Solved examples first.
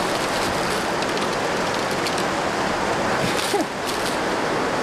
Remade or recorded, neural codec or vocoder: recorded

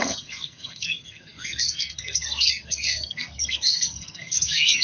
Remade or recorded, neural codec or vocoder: remade, codec, SNAC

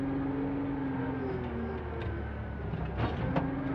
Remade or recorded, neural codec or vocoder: recorded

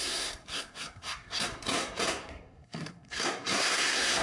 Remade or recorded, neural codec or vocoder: remade, codec, SNAC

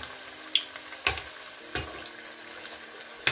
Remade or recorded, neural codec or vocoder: recorded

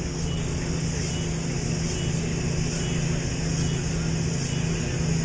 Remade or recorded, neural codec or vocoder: recorded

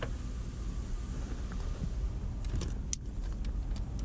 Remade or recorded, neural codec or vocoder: recorded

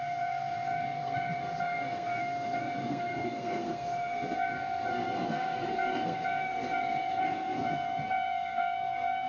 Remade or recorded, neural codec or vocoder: remade, codec, SNAC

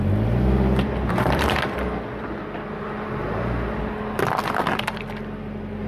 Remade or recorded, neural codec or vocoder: recorded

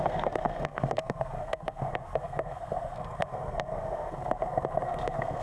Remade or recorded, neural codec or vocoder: remade, codec, SNAC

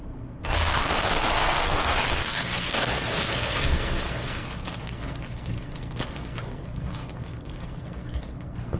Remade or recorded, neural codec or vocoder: remade, codec, SNAC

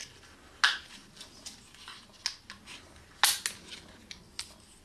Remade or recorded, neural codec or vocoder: recorded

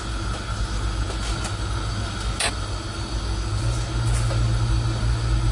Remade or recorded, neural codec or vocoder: recorded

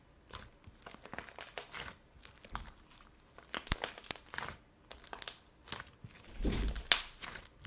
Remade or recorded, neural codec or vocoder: recorded